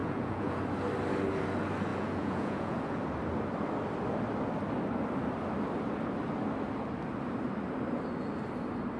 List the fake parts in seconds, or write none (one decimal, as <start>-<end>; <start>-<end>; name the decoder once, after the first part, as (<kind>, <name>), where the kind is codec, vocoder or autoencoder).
0.0-0.6 (vocoder, Vocos); 1.9-3.0